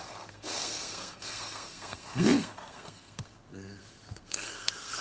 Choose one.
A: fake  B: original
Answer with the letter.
A